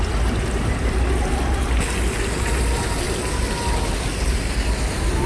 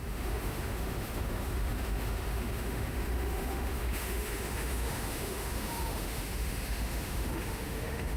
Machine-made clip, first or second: second